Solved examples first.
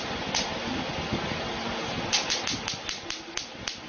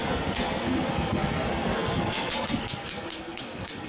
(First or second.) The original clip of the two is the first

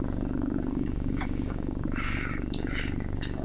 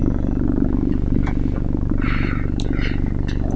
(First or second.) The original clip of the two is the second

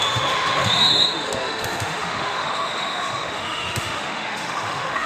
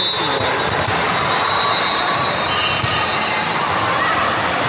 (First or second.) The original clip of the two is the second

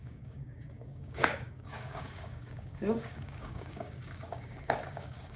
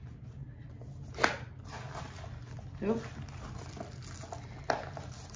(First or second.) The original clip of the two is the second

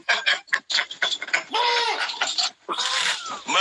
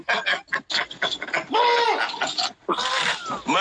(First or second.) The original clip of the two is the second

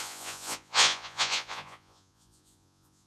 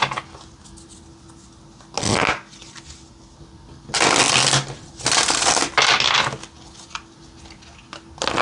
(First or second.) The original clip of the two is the second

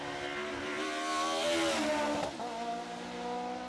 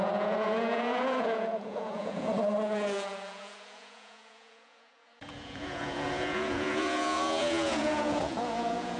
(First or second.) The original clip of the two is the first